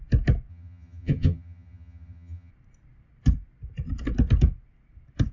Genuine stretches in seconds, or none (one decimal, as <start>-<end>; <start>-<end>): 0.0-0.5; 2.5-5.3